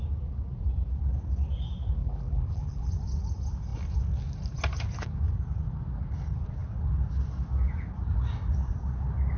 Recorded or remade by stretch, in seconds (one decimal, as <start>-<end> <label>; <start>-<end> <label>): 0.0-2.0 recorded; 2.0-2.9 remade; 2.9-9.4 recorded